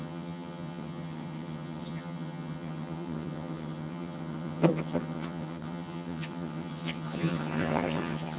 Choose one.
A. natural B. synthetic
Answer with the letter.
B